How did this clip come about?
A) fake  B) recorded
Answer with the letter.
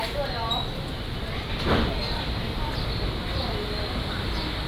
B